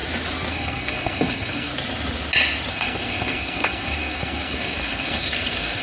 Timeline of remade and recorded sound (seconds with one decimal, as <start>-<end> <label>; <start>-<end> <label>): 0.0-0.5 recorded; 0.5-1.7 remade; 1.7-2.7 recorded; 2.7-5.8 remade